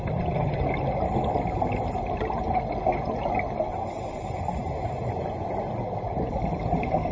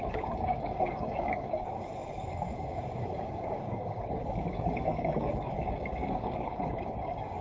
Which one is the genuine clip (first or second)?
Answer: first